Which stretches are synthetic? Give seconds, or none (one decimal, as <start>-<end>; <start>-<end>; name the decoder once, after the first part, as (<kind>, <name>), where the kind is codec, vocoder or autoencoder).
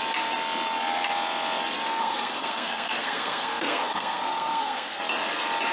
2.0-5.0 (codec, SNAC)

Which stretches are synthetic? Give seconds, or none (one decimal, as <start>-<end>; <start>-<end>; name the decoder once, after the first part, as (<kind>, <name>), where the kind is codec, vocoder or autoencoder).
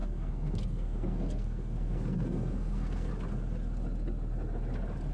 0.0-3.1 (codec, SNAC)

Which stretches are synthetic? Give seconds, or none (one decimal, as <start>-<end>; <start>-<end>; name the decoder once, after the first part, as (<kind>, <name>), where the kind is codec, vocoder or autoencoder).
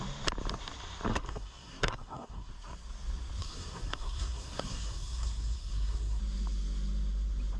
1.1-2.5 (codec, SNAC); 3.4-6.2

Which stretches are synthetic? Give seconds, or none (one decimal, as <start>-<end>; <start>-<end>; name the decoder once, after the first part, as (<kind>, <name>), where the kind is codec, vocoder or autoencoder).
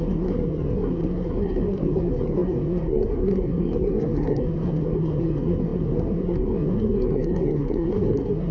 0.0-8.5 (codec, SNAC)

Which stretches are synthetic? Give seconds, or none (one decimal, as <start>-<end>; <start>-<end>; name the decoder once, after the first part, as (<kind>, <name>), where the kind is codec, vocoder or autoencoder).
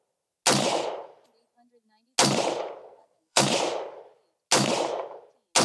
2.8-3.4 (codec, SNAC)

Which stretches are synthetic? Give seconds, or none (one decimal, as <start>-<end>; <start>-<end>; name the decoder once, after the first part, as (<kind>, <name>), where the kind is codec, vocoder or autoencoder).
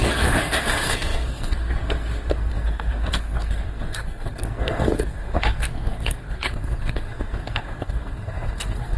0.0-9.0 (codec, SNAC)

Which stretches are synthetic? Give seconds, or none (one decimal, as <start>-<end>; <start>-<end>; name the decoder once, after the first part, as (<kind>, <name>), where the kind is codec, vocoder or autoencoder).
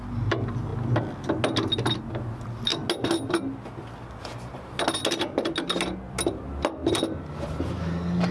none